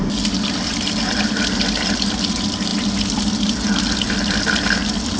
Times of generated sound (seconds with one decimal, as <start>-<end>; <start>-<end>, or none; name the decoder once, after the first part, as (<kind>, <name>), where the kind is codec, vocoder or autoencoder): none